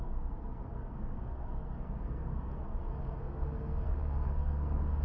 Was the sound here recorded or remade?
remade